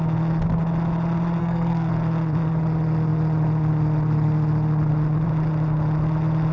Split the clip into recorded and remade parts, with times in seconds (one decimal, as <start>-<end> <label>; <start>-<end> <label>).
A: 0.0-1.4 recorded; 1.4-1.9 remade; 1.9-6.5 recorded